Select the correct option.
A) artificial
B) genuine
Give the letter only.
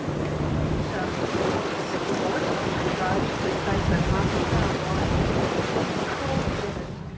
B